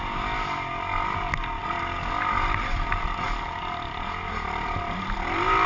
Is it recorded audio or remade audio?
recorded